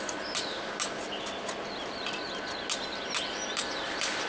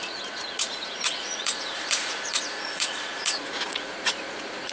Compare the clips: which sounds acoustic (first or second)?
first